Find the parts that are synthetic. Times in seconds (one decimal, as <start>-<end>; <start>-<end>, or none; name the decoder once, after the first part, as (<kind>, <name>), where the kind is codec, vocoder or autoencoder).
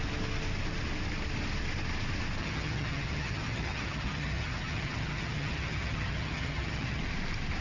2.4-7.0 (vocoder, HiFi-GAN)